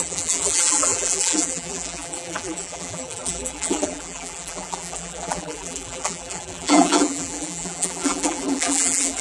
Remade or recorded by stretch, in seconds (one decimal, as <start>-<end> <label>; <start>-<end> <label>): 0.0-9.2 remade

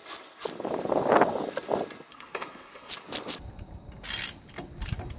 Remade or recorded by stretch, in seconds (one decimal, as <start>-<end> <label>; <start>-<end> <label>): 0.0-2.1 recorded; 2.1-2.9 remade; 2.9-5.2 recorded

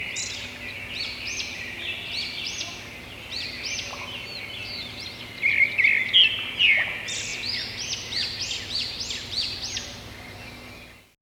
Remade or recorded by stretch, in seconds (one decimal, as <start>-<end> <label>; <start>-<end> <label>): 0.0-11.2 recorded

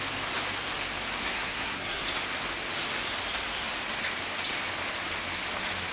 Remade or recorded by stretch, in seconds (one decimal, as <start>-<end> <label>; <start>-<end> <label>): 0.0-1.2 recorded; 1.2-2.0 remade; 2.0-5.9 recorded

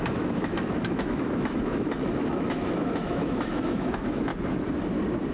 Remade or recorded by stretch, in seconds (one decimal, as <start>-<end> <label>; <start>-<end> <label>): 0.0-4.3 remade; 4.3-5.3 recorded